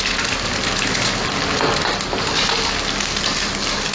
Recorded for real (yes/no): yes